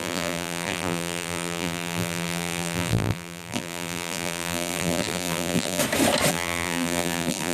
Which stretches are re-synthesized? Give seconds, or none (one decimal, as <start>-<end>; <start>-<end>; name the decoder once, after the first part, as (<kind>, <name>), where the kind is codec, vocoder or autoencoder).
0.0-5.8 (vocoder, BigVGAN v2); 6.3-7.5